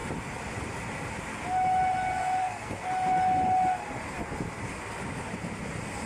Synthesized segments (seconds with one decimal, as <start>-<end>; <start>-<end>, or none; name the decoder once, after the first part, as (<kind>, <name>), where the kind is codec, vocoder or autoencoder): 2.4-2.9 (codec, SNAC)